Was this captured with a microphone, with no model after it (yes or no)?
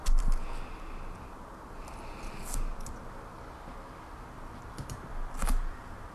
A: yes